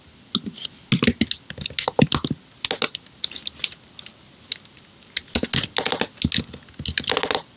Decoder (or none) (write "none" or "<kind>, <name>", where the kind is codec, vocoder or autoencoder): none